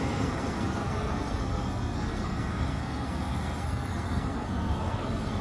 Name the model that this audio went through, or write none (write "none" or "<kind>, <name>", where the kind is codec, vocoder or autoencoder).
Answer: codec, SNAC